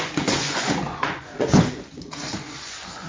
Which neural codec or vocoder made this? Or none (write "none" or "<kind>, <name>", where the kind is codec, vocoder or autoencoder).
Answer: vocoder, Vocos